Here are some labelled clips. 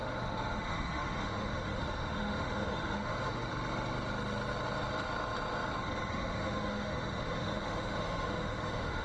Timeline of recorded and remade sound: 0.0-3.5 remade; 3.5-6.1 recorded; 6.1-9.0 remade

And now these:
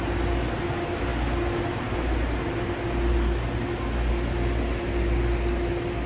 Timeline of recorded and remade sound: 0.0-6.1 recorded

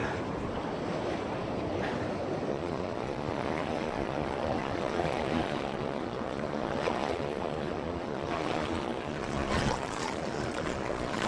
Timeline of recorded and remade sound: 0.0-2.5 recorded; 2.5-11.3 remade

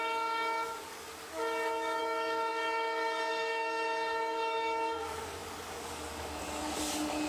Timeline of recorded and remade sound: 0.0-7.3 remade